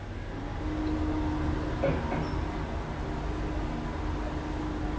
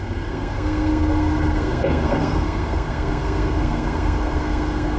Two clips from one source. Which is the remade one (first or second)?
second